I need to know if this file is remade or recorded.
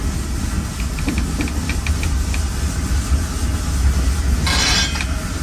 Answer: recorded